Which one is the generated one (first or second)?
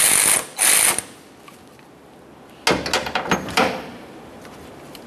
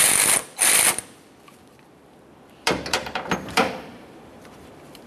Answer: second